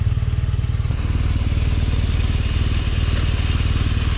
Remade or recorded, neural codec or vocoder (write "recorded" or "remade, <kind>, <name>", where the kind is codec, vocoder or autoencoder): recorded